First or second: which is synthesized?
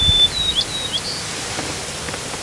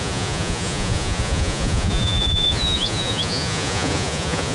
second